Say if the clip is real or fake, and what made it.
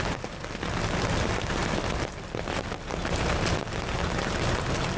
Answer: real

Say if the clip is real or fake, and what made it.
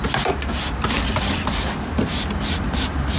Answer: real